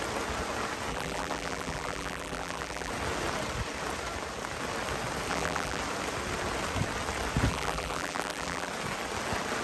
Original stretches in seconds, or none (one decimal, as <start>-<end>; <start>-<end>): 0.0-0.9; 2.9-5.3; 5.8-7.5; 8.7-9.6